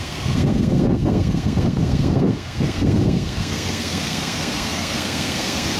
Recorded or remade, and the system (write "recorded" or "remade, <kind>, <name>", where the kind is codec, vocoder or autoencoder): remade, codec, SNAC